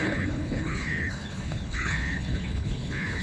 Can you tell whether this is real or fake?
fake